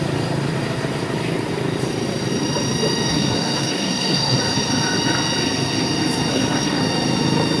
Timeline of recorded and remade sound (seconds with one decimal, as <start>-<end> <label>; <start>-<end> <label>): 0.0-3.1 recorded; 3.1-4.4 remade; 4.4-6.3 recorded; 6.3-6.8 remade; 6.8-7.6 recorded